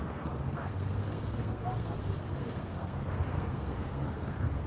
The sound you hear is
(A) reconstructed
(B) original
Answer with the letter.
A